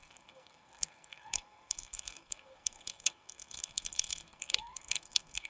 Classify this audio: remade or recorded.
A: remade